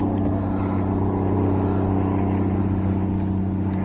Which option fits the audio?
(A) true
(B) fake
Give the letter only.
A